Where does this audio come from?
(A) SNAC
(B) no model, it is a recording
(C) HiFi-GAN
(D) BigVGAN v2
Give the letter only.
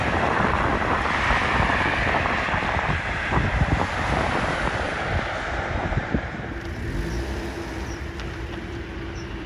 D